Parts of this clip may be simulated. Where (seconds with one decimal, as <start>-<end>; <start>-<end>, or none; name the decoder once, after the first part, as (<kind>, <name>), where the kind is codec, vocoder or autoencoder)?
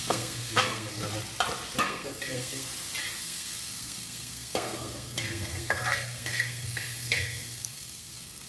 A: 0.0-1.0 (codec, SNAC); 1.8-2.7; 3.2-8.5